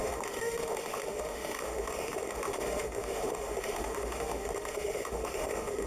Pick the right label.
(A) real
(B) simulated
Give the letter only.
B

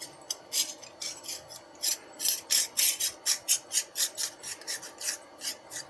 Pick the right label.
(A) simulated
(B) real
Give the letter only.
B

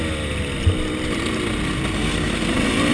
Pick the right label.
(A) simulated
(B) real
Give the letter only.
B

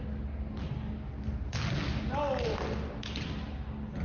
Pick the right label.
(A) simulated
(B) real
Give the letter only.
B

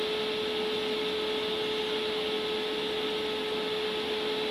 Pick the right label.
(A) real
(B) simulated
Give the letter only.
A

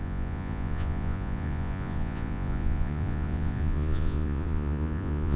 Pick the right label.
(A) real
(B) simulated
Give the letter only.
B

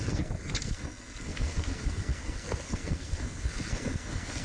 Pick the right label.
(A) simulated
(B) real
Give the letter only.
A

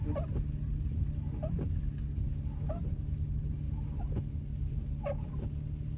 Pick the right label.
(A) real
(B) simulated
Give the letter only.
A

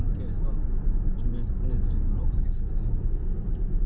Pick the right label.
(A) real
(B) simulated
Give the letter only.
B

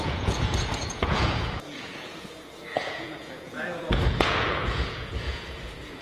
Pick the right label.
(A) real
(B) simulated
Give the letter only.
B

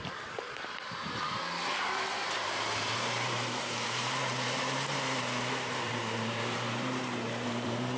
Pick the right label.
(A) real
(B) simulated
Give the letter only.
B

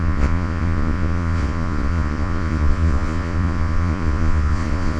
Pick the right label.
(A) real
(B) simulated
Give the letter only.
B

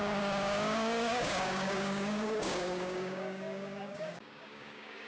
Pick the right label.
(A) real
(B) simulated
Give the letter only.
B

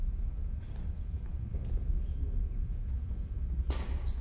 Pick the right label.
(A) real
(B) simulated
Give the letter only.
A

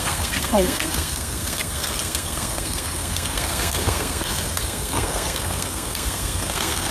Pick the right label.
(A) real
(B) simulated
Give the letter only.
B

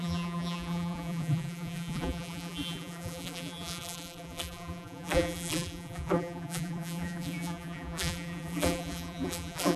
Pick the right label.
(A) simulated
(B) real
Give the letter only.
A